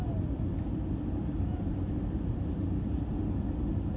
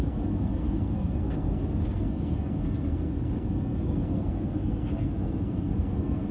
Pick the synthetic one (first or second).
second